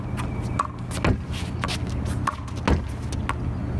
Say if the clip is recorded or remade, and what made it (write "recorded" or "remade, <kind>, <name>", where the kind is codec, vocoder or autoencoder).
recorded